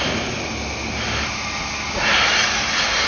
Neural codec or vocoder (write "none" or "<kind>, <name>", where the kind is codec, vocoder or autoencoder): none